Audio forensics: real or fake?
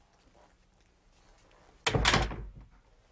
real